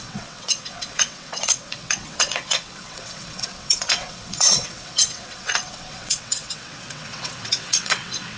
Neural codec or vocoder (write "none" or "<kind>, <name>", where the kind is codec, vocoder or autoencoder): vocoder, WaveNeXt